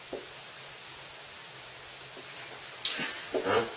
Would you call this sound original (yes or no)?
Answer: no